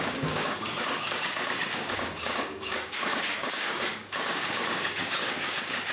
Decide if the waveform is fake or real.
fake